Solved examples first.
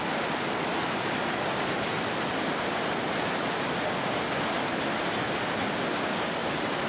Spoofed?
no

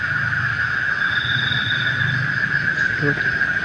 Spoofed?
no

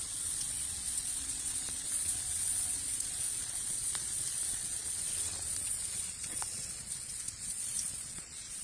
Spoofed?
yes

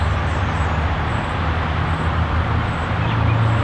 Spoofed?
no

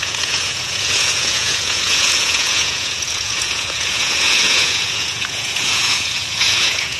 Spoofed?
yes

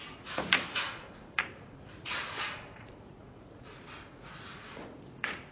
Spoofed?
yes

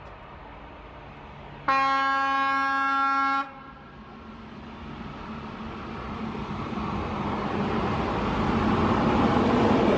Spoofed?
no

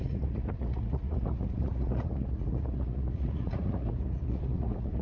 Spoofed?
yes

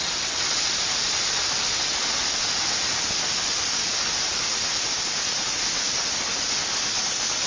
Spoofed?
no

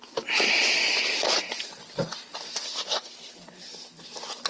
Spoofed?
no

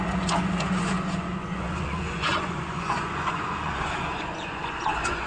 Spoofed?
yes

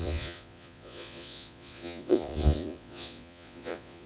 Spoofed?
yes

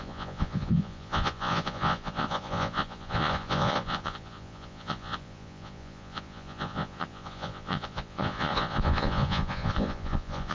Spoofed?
yes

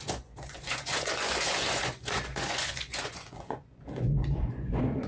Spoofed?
yes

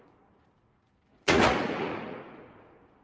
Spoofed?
yes